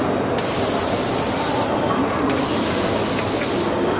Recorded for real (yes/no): yes